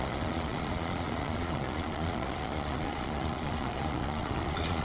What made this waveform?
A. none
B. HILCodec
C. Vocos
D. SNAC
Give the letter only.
C